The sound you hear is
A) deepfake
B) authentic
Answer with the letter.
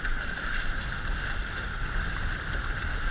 B